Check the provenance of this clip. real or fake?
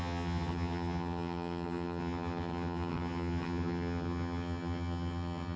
fake